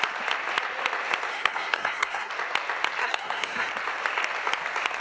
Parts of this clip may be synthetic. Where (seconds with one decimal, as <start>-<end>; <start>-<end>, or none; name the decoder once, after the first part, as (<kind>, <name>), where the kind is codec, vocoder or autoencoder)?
1.3-2.3 (codec, SNAC); 3.0-3.7